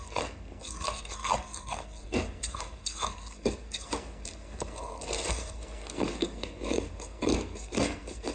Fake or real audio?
fake